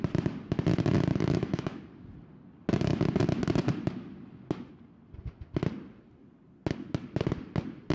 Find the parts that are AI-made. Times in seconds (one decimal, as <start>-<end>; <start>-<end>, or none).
1.1-1.8

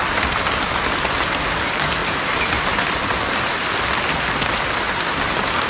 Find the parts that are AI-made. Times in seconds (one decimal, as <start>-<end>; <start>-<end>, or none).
none